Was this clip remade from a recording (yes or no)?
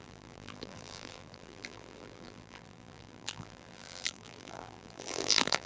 yes